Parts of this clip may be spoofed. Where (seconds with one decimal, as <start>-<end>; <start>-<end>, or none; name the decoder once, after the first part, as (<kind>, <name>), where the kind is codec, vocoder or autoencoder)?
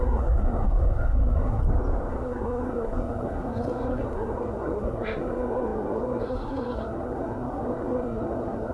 0.0-1.6 (codec, SNAC); 2.1-8.7